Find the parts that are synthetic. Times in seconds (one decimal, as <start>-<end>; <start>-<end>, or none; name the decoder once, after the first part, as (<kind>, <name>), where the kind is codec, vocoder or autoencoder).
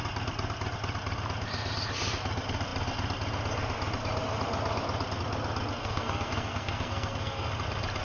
5.8-7.5 (codec, SNAC)